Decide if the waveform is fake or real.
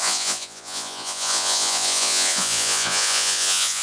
fake